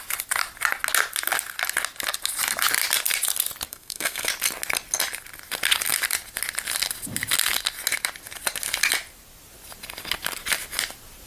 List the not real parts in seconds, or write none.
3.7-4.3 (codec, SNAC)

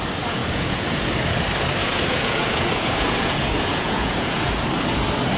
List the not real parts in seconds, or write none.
0.4-1.1 (vocoder, Vocos); 1.8-4.5

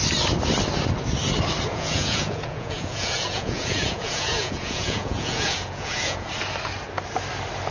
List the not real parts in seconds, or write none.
1.7-6.3 (vocoder, Vocos)

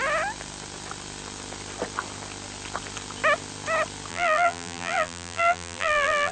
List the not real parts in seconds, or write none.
4.1-6.3 (vocoder, BigVGAN v2)

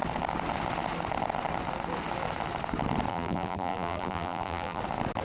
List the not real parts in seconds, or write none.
3.1-4.8 (vocoder, BigVGAN v2)

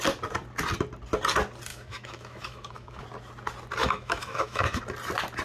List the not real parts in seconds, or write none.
1.7-3.0 (autoencoder, DAC-VAE); 3.8-4.8